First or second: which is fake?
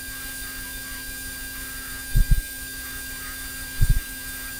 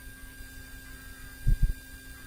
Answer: first